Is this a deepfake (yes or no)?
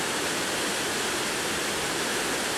no